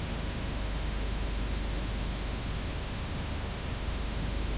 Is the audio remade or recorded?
remade